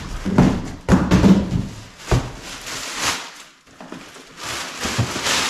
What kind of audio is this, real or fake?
real